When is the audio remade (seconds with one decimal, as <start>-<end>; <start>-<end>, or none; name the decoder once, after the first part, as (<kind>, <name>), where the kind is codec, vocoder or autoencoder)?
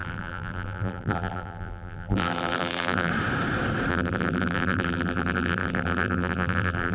0.0-3.1 (vocoder, BigVGAN v2); 3.9-6.9